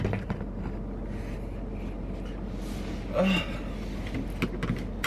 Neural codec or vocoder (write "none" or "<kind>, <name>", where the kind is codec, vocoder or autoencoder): none